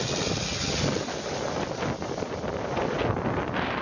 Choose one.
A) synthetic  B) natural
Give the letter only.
B